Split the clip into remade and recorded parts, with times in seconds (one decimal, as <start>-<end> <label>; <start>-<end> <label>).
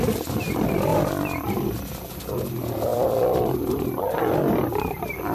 0.0-0.9 recorded; 0.9-1.8 remade; 1.8-2.9 recorded; 2.9-4.1 remade; 4.1-5.3 recorded